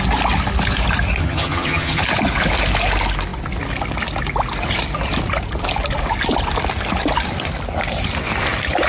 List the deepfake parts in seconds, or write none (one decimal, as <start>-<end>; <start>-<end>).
1.2-2.0